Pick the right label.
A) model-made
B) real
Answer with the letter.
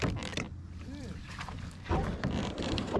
A